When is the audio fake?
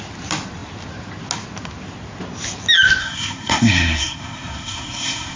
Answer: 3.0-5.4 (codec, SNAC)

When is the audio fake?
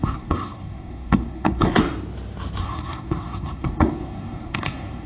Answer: 0.0-1.8 (codec, SNAC); 2.6-5.1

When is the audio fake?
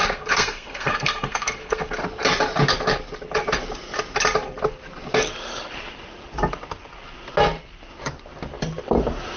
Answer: 0.0-1.9 (codec, SNAC)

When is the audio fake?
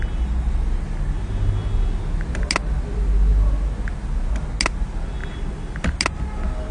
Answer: none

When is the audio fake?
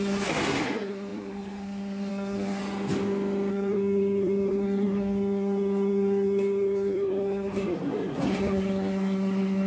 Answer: 0.0-2.6 (codec, SNAC); 3.5-9.7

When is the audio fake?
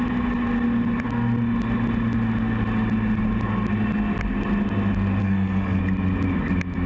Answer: 5.2-5.8 (codec, SNAC)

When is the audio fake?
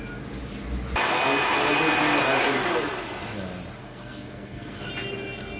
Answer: 3.8-4.9 (codec, SNAC)